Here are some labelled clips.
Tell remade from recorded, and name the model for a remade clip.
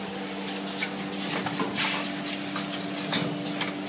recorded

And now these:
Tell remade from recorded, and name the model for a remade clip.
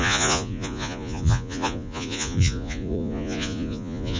remade, vocoder, Vocos